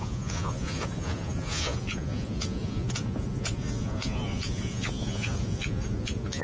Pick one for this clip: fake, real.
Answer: fake